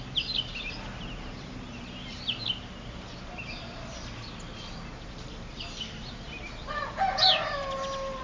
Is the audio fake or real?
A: real